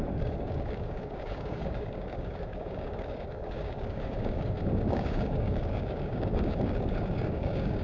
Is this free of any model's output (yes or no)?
no